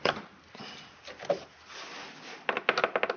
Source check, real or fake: real